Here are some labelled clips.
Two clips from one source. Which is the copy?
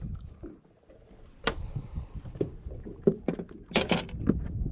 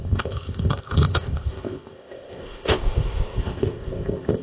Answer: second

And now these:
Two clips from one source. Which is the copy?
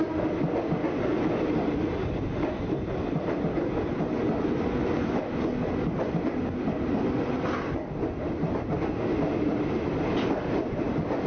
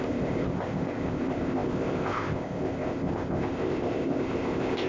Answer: second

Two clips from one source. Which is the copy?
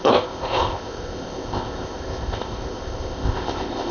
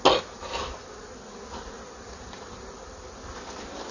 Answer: first